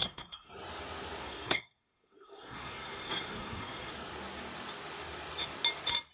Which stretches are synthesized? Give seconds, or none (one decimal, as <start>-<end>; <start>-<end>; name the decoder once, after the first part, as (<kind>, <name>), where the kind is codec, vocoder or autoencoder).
0.0-0.5 (codec, SNAC); 1.2-3.9